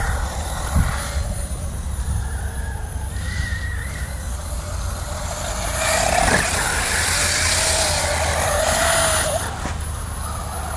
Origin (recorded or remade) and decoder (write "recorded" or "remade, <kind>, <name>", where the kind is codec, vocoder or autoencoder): recorded